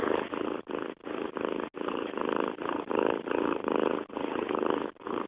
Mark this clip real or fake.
real